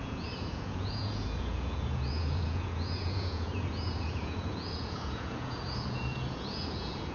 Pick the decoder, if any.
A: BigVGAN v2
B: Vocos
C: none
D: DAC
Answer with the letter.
B